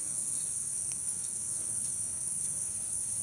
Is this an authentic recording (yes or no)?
no